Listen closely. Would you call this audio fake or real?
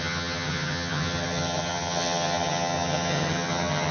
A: fake